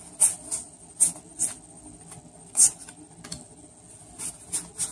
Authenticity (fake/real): real